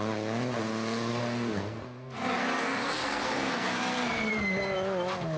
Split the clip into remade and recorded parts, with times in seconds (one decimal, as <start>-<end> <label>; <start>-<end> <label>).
0.0-1.1 recorded; 1.1-4.3 remade; 4.3-5.4 recorded

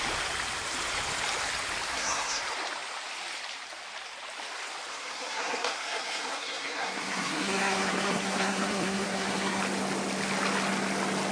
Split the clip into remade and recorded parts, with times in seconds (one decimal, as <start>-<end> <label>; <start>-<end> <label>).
0.0-1.9 recorded; 1.9-2.4 remade; 2.4-4.9 recorded; 4.9-9.6 remade; 9.6-11.3 recorded

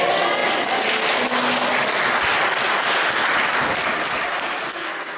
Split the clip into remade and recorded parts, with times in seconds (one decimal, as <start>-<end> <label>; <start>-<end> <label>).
0.0-4.6 recorded; 4.6-5.2 remade

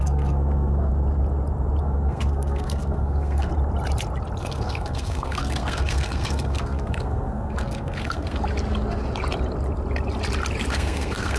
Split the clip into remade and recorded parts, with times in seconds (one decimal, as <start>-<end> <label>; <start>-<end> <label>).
0.0-0.9 remade; 0.9-1.8 recorded; 1.8-3.5 remade; 3.5-4.4 recorded; 4.4-8.4 remade; 8.4-10.7 recorded; 10.7-11.4 remade

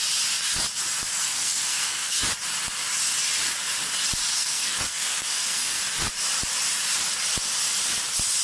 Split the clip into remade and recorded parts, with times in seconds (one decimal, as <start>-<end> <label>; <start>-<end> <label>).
0.0-1.1 recorded; 1.1-2.2 remade; 2.2-4.3 recorded; 4.3-5.8 remade; 5.8-8.4 recorded

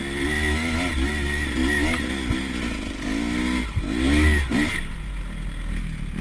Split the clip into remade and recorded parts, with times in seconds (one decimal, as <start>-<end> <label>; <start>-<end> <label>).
0.0-6.2 recorded

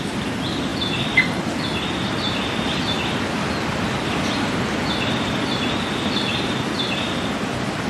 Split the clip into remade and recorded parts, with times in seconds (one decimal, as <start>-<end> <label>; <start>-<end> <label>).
0.0-7.9 recorded

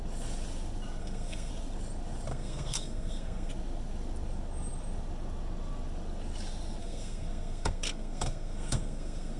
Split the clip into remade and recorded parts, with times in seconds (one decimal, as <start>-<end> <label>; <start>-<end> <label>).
0.0-1.0 recorded; 1.0-1.5 remade; 1.5-2.3 recorded; 2.3-3.5 remade; 3.5-6.8 recorded; 6.8-9.4 remade